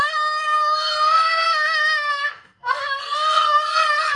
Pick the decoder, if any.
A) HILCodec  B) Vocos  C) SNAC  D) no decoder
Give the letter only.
C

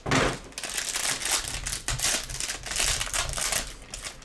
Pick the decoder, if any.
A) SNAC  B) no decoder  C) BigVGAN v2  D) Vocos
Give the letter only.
B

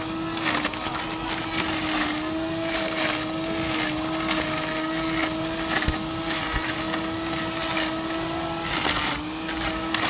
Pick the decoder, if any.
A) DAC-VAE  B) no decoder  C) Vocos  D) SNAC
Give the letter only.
B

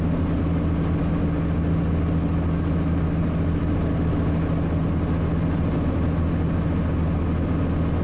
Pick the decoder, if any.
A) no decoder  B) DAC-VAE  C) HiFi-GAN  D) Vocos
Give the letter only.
A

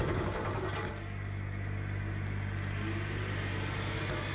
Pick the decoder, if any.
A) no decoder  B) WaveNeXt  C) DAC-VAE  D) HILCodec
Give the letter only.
A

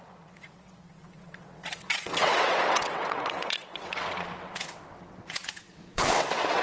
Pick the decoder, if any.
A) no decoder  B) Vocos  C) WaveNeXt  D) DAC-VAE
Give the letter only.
C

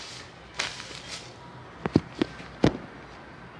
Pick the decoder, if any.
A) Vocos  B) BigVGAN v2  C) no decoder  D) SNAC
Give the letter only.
C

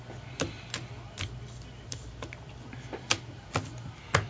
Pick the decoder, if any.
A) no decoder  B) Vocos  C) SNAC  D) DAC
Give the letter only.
A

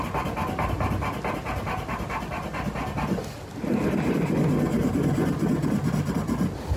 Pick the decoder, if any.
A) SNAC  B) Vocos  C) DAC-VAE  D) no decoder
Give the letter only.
D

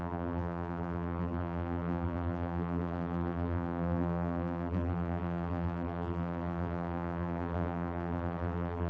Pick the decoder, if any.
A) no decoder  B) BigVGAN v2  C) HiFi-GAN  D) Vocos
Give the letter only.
B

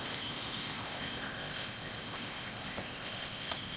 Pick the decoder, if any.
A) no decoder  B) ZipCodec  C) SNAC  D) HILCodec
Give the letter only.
B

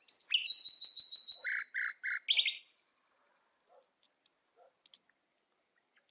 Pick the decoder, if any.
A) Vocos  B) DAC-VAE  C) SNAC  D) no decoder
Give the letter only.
D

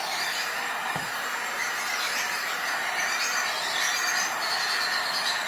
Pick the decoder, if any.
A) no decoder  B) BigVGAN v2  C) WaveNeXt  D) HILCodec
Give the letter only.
B